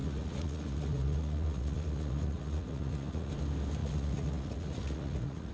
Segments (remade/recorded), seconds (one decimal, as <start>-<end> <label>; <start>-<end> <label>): 0.0-3.3 remade; 3.3-3.8 recorded; 3.8-5.5 remade